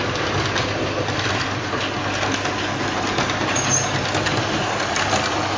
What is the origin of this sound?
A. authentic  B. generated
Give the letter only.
A